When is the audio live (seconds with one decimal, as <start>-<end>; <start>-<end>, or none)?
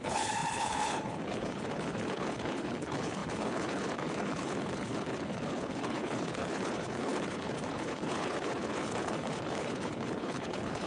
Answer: none